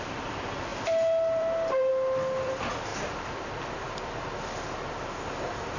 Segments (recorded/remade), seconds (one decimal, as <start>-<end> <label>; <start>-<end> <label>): 0.0-0.7 recorded; 0.7-1.9 remade; 1.9-2.9 recorded; 2.9-4.2 remade; 4.2-5.8 recorded